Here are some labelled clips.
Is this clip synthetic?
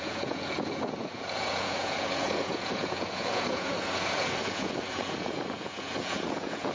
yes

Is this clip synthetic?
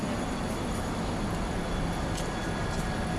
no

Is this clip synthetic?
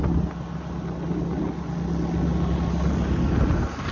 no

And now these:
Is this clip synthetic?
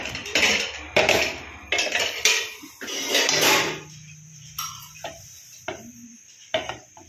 yes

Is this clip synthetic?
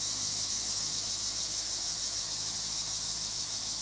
yes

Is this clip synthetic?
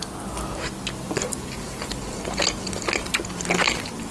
no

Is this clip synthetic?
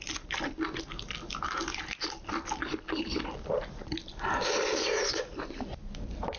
no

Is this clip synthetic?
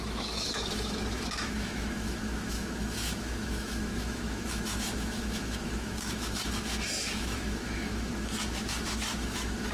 yes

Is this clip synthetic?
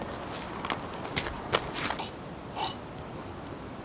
no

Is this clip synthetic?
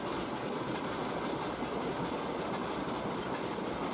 no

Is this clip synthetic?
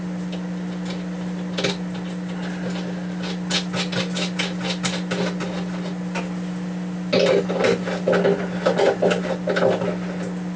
no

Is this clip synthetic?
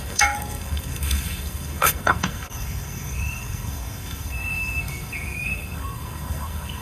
yes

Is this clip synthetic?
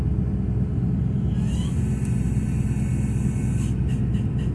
no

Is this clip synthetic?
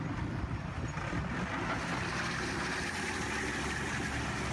no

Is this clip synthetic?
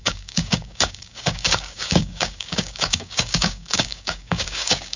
yes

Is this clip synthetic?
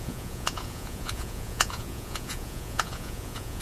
yes